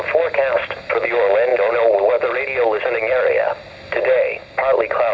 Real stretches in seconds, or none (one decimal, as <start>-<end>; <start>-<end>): 0.0-5.1